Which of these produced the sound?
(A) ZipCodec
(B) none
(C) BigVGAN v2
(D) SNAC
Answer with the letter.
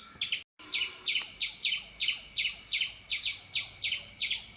B